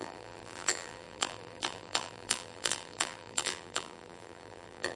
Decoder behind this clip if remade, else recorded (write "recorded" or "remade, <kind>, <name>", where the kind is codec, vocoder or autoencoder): remade, vocoder, BigVGAN v2